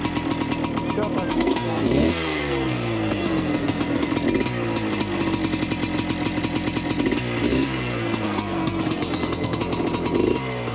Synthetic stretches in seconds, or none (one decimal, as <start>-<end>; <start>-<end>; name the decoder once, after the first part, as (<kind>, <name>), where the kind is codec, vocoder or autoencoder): 1.3-4.1 (codec, SNAC); 7.5-9.6